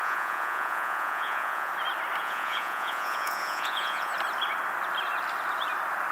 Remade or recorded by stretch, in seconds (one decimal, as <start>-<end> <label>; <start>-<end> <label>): 0.0-1.7 remade; 1.7-2.2 recorded; 2.2-4.1 remade; 4.1-6.1 recorded